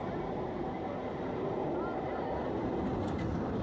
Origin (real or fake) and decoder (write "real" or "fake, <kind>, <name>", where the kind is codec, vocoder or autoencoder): real